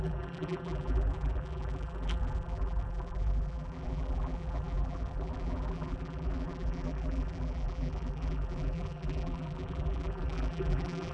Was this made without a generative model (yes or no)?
no